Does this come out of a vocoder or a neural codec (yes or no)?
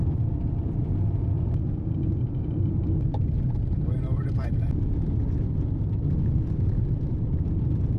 no